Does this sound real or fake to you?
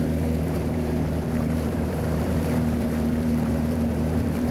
fake